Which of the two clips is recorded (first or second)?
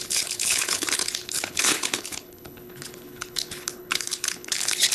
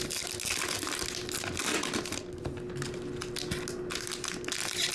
second